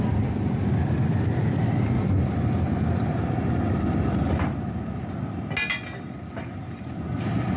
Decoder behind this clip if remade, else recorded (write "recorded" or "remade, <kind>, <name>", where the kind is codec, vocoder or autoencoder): recorded